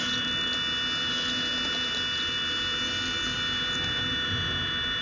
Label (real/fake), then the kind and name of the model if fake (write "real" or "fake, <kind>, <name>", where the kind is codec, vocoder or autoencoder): real